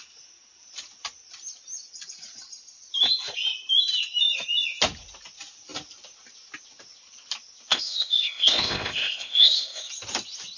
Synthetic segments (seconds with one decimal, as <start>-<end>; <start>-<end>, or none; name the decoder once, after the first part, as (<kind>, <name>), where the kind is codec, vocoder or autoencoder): 7.7-9.9 (codec, ZipCodec)